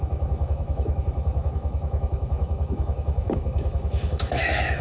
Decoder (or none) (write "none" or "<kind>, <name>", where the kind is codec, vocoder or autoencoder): autoencoder, DAC-VAE